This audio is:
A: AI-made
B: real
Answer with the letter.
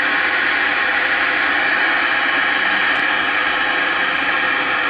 B